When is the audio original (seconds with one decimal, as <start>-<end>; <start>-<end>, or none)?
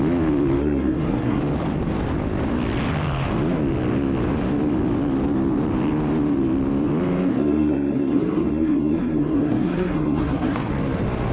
0.0-0.6; 1.4-7.3; 10.7-11.3